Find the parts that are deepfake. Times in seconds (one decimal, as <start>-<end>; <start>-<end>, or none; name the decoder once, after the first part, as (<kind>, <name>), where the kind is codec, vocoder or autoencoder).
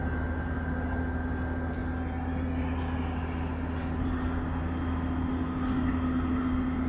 none